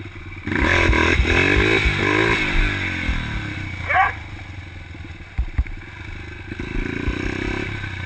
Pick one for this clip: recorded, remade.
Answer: recorded